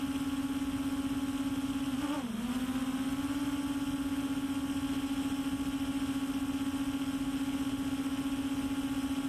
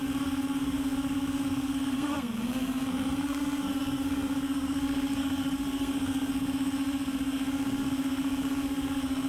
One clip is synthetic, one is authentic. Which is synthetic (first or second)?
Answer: second